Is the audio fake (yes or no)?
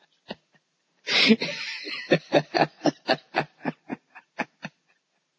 no